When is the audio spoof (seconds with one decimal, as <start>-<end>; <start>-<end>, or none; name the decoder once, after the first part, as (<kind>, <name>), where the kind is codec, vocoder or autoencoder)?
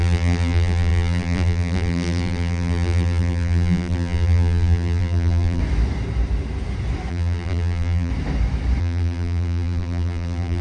0.0-5.6 (vocoder, BigVGAN v2); 7.1-8.1; 8.8-10.6